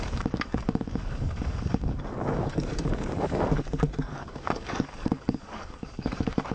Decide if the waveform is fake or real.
fake